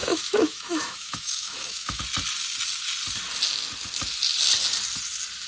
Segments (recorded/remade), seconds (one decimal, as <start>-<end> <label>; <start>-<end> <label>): 0.0-2.0 remade; 2.0-5.5 recorded